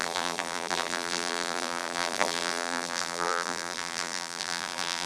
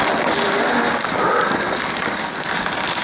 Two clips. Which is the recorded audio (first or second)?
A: second